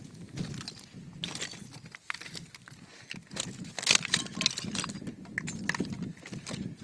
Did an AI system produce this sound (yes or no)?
no